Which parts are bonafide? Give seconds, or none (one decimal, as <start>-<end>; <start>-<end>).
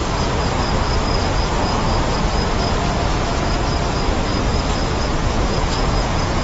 0.0-3.1; 3.6-5.2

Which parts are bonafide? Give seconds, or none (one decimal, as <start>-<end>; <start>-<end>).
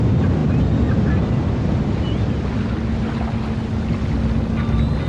0.0-5.1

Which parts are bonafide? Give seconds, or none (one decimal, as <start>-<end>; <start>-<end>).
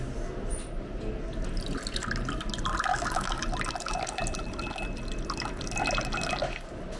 0.0-2.9; 3.4-7.0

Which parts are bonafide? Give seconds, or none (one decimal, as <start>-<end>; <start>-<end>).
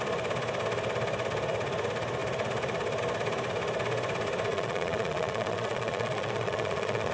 0.0-4.5